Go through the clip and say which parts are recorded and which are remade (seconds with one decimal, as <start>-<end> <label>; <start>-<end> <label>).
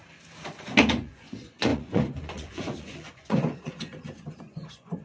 0.0-0.9 recorded; 0.9-5.0 remade